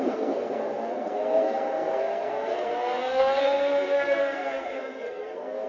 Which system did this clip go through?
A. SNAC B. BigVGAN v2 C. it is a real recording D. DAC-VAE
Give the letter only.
A